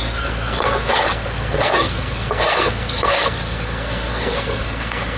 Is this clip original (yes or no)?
no